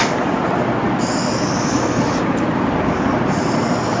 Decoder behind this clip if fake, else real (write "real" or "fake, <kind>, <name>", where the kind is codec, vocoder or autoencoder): real